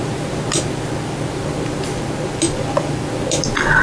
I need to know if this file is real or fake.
real